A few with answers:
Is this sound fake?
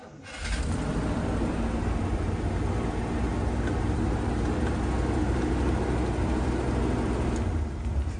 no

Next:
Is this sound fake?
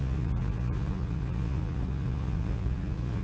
yes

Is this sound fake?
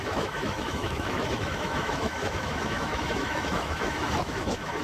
yes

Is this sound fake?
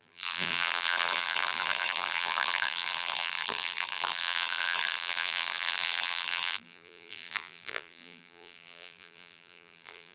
yes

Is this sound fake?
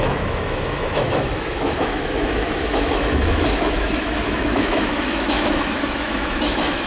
yes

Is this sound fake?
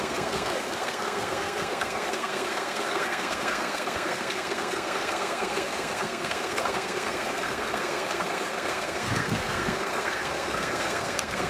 yes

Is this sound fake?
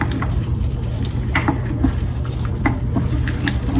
yes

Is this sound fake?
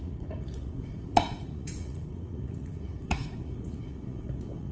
yes